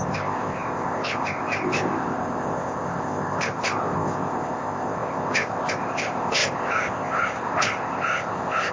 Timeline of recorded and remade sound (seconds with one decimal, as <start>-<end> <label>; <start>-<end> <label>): 0.0-8.7 remade